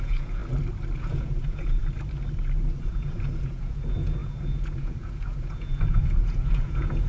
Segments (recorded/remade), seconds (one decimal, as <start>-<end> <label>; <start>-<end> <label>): 0.0-0.4 remade; 0.4-1.0 recorded; 1.0-1.8 remade; 1.8-2.8 recorded; 2.8-7.1 remade